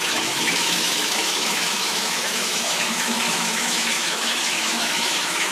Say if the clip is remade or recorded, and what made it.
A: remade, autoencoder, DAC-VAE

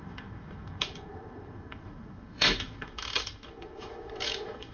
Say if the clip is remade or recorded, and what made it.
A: remade, autoencoder, DAC-VAE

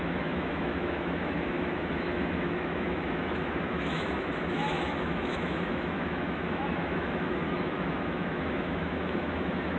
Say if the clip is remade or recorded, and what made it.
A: remade, autoencoder, DAC-VAE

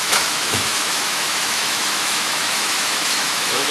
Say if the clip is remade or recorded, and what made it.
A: remade, autoencoder, DAC-VAE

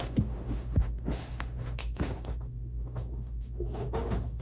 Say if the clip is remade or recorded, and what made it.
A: remade, autoencoder, DAC-VAE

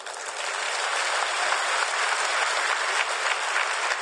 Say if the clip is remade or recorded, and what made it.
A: recorded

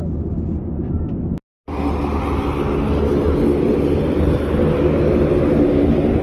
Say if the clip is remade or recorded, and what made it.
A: recorded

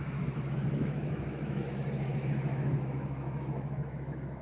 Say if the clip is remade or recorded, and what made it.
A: remade, autoencoder, DAC-VAE